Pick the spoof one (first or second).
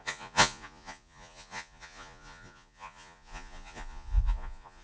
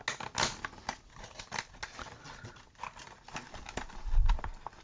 first